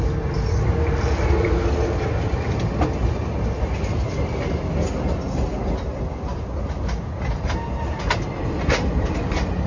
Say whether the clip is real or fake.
real